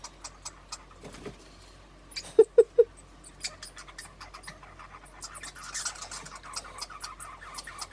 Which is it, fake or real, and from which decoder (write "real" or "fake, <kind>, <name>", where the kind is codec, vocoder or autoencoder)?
real